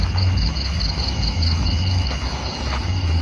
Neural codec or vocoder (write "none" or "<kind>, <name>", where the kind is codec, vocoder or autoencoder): autoencoder, DAC-VAE